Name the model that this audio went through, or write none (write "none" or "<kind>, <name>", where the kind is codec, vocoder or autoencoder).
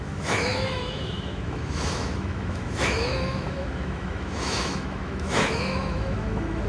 autoencoder, DAC-VAE